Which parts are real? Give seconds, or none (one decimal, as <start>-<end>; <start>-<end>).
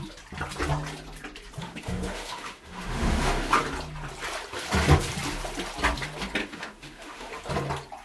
0.0-1.6; 3.5-6.4; 7.4-8.0